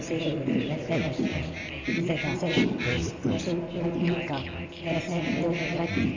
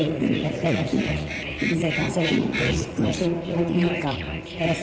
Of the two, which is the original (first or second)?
first